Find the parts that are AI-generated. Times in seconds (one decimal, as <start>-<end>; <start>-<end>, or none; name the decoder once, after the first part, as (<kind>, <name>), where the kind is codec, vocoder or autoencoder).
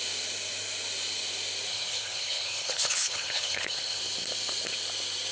1.7-4.0 (codec, HILCodec)